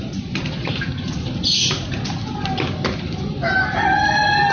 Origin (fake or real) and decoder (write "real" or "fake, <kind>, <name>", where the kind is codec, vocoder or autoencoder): real